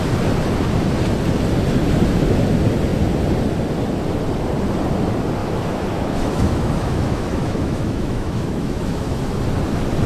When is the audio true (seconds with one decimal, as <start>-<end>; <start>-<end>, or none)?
0.0-5.4; 9.3-10.1